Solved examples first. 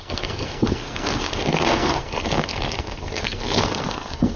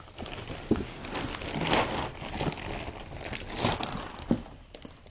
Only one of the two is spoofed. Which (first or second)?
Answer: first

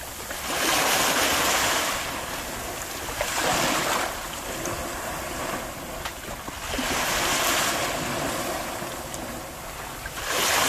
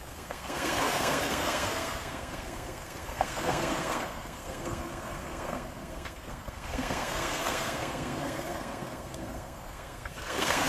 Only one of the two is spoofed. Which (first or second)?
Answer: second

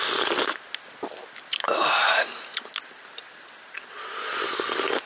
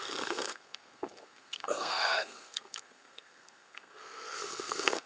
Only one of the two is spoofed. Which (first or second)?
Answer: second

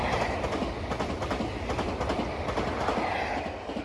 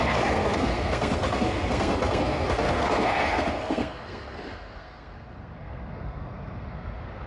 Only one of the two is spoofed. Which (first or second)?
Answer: second